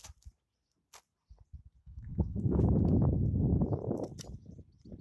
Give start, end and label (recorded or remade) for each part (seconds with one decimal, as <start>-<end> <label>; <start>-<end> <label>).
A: 0.0-1.8 recorded; 1.8-2.6 remade; 2.6-5.0 recorded